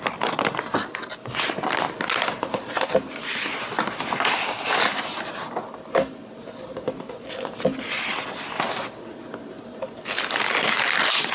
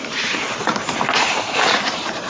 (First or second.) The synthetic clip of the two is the second